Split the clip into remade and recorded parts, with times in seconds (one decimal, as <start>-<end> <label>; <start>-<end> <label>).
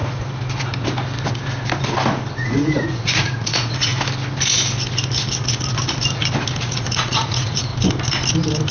0.0-2.3 recorded; 2.3-3.9 remade; 3.9-6.6 recorded; 6.6-7.7 remade; 7.7-8.7 recorded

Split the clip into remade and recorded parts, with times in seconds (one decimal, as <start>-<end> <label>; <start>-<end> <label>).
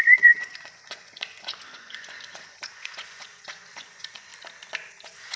0.0-4.3 remade; 4.3-4.9 recorded; 4.9-5.4 remade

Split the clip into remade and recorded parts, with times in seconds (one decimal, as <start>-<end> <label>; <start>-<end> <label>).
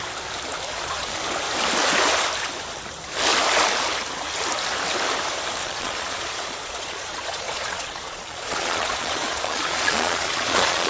0.0-0.7 recorded; 0.7-1.2 remade; 1.2-5.6 recorded; 5.6-10.9 remade